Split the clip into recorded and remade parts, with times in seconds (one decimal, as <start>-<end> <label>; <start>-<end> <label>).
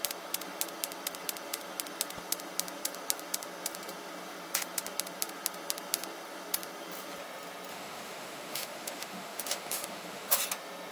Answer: 0.0-7.7 recorded; 7.7-10.4 remade; 10.4-10.9 recorded